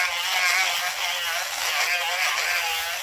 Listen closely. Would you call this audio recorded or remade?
recorded